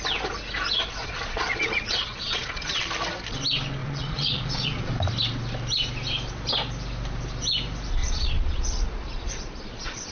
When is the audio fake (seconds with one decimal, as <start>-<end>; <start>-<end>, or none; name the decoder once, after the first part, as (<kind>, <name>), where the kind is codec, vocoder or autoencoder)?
1.0-2.8 (vocoder, Vocos); 3.8-4.9; 8.0-10.1